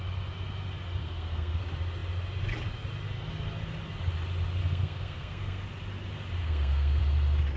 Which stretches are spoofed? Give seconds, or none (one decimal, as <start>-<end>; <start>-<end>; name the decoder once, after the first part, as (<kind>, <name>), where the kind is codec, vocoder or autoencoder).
1.0-1.6 (codec, SNAC); 4.6-5.6; 6.4-7.0